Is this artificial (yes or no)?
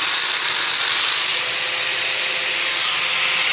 no